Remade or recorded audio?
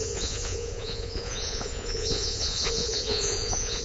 remade